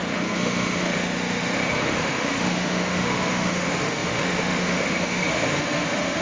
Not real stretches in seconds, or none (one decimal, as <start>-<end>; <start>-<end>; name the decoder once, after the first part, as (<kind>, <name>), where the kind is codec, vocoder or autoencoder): 0.0-6.2 (autoencoder, DAC-VAE)